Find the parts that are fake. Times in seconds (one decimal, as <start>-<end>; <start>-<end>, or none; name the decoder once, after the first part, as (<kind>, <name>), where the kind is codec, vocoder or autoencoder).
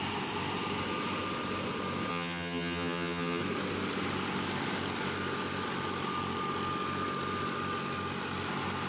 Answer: 2.1-3.4 (vocoder, HiFi-GAN)